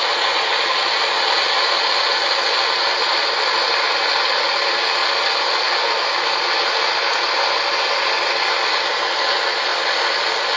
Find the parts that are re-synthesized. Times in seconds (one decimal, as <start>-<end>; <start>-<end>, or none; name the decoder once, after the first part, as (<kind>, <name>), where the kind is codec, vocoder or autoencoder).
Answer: 3.1-3.6 (vocoder, BigVGAN v2); 9.7-10.2

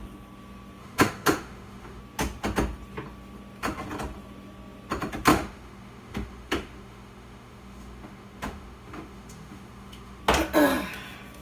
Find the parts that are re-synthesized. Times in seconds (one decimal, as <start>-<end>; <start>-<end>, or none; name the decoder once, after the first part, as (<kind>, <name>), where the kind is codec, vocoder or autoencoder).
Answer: 0.8-2.0 (autoencoder, DAC-VAE); 5.3-10.2

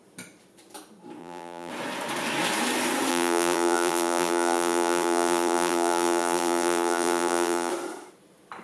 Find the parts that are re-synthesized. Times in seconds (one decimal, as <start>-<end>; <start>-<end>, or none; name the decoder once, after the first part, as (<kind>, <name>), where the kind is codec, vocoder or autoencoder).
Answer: 1.2-1.7 (vocoder, BigVGAN v2); 3.1-7.7

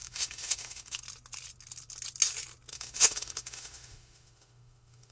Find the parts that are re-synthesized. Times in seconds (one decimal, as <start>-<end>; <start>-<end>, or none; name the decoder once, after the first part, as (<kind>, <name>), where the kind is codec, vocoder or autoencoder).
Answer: 0.0-1.0 (autoencoder, DAC-VAE); 2.7-5.1